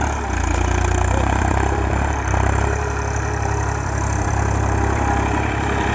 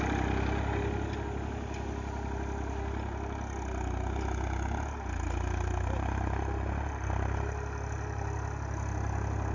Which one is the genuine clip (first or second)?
second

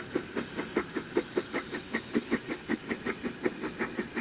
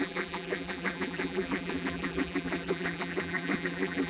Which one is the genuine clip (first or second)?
first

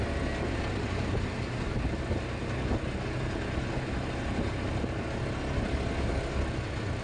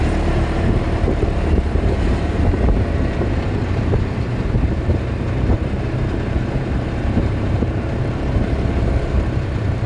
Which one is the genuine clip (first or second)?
first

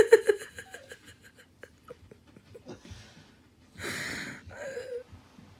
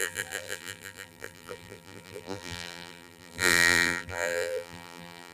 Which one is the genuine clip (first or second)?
first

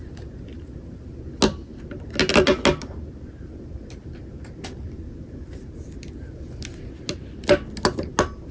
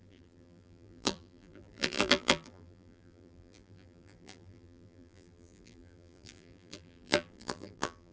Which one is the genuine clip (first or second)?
first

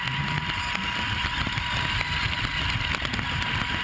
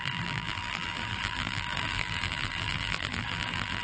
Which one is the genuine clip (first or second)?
first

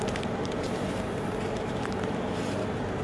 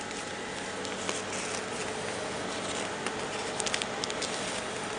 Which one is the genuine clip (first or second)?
second